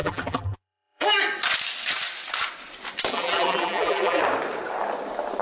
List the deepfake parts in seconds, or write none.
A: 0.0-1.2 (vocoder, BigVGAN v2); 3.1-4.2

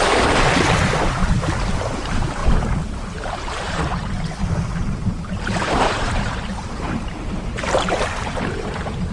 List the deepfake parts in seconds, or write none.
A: 0.0-1.4 (vocoder, BigVGAN v2); 1.9-9.1

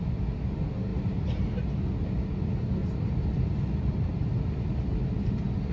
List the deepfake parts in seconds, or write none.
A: 0.9-1.4 (vocoder, BigVGAN v2); 2.8-5.1